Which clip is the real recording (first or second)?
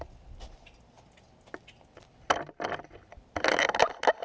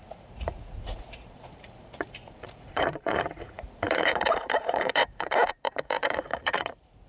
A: first